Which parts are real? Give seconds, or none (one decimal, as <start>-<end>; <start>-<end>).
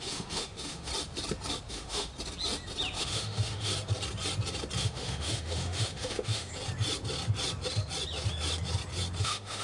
0.9-1.7; 2.1-3.0; 3.7-4.8; 6.5-9.2